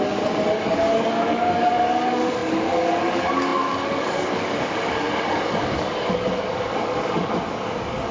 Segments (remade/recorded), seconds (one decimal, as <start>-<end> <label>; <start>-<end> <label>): 0.0-8.1 remade